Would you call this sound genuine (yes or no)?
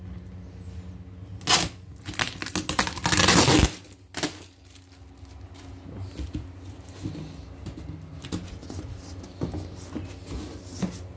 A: yes